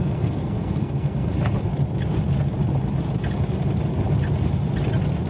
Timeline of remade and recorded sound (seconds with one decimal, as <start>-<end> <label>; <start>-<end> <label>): 0.0-1.7 remade; 1.7-5.3 recorded

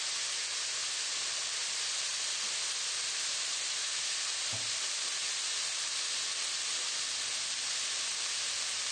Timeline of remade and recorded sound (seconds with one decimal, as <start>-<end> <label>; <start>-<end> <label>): 0.0-8.9 recorded